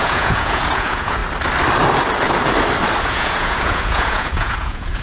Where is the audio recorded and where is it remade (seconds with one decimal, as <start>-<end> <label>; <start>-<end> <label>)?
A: 0.0-1.2 remade; 1.2-3.0 recorded; 3.0-5.0 remade